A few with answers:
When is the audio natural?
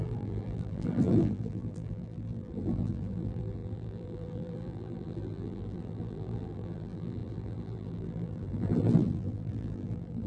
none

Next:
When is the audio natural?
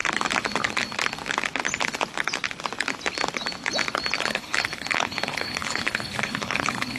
0.0-4.2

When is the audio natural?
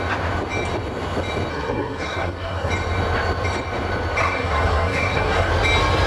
0.0-1.5; 2.7-4.2; 5.5-6.1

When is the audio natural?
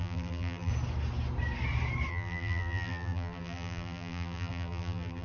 0.7-2.1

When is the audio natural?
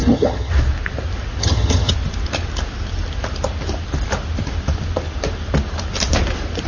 0.5-1.4; 1.9-6.7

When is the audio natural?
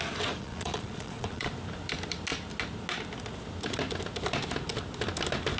0.0-0.4; 1.5-5.6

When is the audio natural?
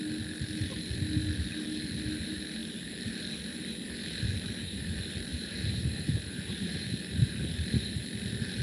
0.0-5.3; 7.0-8.6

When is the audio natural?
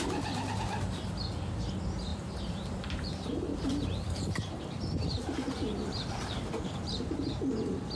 0.0-2.1; 3.1-3.5; 7.4-8.0